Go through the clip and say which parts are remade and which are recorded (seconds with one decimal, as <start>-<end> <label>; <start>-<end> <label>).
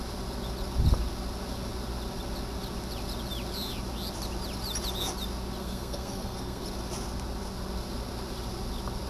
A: 0.0-5.6 recorded; 5.6-6.6 remade; 6.6-9.1 recorded